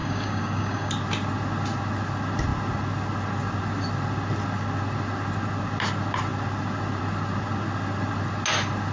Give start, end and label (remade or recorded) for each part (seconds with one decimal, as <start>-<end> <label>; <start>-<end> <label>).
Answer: 0.0-0.9 remade; 0.9-8.9 recorded